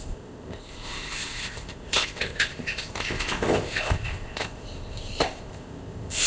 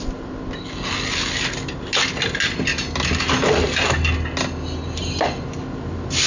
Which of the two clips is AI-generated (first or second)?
first